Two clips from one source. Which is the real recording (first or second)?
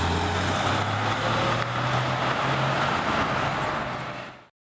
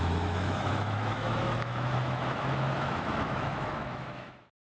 first